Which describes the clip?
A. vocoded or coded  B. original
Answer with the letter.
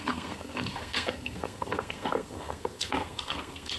A